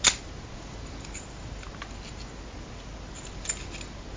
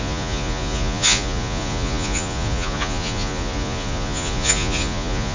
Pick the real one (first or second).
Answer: first